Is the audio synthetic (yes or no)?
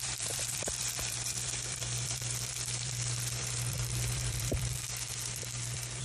yes